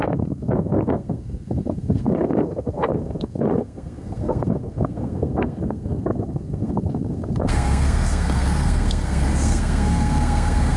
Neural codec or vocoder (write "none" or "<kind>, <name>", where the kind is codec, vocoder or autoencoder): codec, SNAC